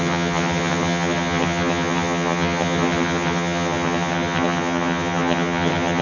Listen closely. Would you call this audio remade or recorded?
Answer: remade